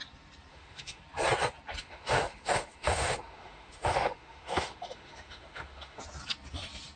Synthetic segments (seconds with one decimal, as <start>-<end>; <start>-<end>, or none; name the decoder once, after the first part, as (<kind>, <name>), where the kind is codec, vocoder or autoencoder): 0.5-1.0 (autoencoder, DAC-VAE); 1.8-6.0